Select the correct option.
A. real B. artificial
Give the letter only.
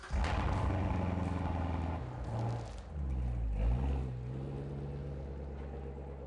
A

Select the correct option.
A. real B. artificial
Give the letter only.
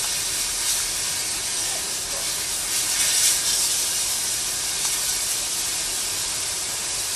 A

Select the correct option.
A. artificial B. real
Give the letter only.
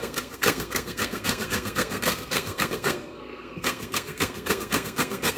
A